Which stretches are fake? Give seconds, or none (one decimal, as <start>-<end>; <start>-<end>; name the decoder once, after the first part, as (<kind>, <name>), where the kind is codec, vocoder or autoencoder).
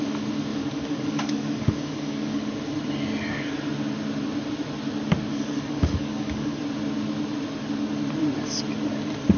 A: 0.5-2.5 (codec, DAC); 5.3-6.6